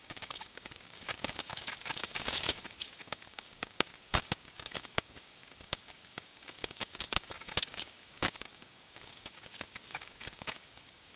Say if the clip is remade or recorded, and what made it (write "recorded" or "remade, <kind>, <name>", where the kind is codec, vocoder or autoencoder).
remade, codec, DAC